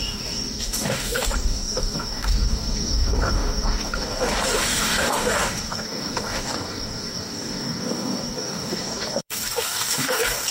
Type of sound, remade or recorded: remade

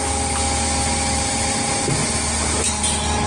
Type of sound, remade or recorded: recorded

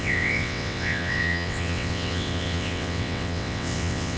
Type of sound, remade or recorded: remade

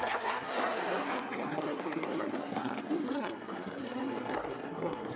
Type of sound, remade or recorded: remade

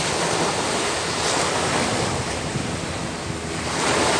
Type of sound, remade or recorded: recorded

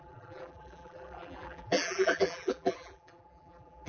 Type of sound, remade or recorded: remade